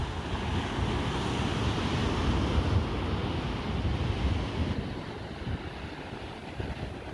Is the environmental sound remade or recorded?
recorded